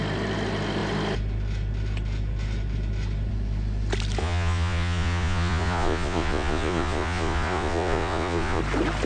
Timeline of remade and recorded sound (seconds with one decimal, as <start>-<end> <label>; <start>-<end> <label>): 0.0-4.2 recorded; 4.2-8.6 remade; 8.6-9.1 recorded